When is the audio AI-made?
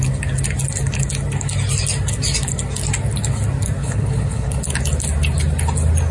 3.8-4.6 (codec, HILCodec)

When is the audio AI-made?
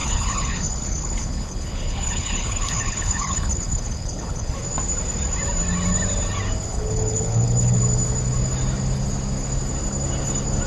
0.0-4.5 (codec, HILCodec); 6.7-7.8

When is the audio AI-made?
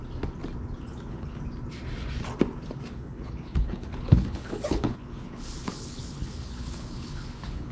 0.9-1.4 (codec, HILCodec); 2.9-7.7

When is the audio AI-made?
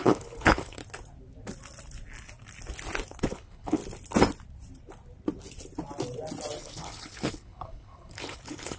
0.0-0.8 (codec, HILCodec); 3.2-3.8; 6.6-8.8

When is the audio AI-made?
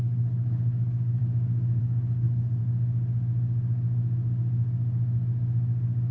0.0-1.2 (codec, HILCodec); 1.8-2.6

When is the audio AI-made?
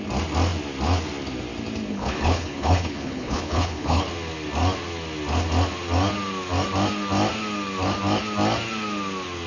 1.9-4.0 (codec, HILCodec)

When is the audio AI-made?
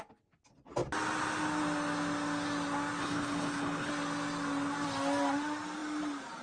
3.0-3.9 (codec, HILCodec)